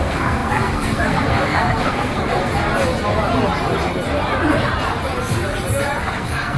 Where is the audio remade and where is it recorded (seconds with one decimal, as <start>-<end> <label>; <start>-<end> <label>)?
0.0-2.5 remade; 2.5-6.0 recorded; 6.0-6.6 remade